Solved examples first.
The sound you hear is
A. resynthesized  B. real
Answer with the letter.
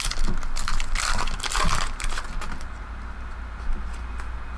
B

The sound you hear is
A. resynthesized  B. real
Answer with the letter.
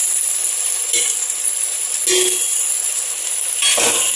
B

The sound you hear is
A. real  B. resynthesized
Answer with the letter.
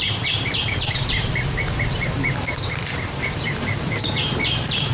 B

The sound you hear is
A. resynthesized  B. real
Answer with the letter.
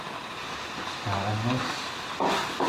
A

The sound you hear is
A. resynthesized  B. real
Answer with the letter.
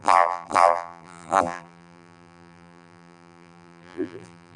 A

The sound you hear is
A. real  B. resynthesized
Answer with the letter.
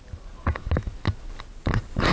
A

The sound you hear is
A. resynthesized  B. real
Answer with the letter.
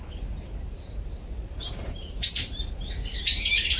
A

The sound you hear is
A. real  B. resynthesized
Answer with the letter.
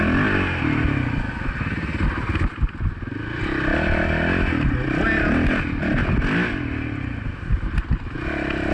A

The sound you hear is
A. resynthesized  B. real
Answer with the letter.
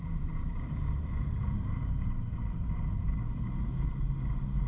A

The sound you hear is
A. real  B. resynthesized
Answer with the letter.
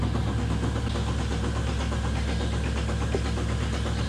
A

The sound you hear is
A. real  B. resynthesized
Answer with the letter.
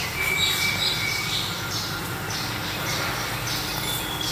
A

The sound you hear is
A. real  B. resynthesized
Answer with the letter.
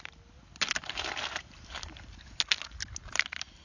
A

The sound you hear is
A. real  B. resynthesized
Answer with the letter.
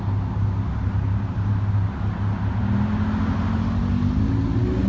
A